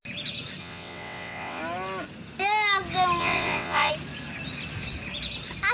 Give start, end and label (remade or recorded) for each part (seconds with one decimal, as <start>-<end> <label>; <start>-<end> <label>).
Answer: 0.0-0.6 recorded; 0.6-1.6 remade; 1.6-3.2 recorded; 3.2-3.9 remade; 3.9-5.7 recorded